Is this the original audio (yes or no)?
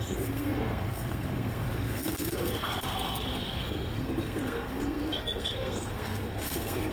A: no